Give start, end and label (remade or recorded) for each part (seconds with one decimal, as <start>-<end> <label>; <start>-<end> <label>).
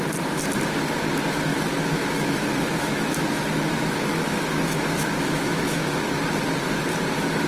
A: 0.0-1.5 recorded; 1.5-6.0 remade; 6.0-7.5 recorded